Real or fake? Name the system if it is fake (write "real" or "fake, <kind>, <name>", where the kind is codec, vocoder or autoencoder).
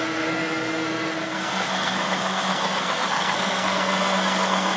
fake, codec, SNAC